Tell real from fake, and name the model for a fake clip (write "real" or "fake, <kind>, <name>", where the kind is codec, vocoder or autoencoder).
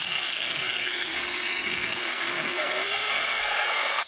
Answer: fake, codec, SNAC